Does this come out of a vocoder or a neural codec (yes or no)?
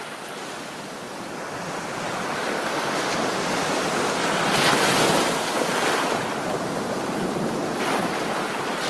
no